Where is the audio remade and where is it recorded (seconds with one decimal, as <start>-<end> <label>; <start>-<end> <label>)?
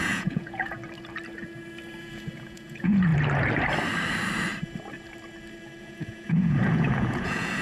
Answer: 0.0-0.8 remade; 0.8-2.0 recorded; 2.0-3.1 remade; 3.1-5.8 recorded; 5.8-7.6 remade